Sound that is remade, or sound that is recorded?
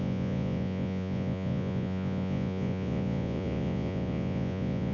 remade